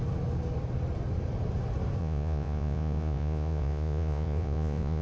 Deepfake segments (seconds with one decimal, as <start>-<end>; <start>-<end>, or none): 2.0-5.0